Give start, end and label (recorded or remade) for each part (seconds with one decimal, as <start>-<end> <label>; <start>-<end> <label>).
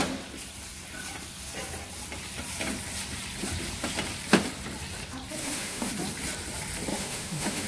0.0-5.4 recorded; 5.4-5.9 remade; 5.9-6.9 recorded; 6.9-7.7 remade